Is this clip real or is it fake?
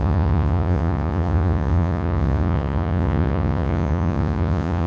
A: fake